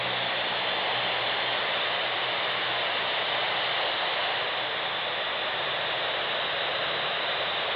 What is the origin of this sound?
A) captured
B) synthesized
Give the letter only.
A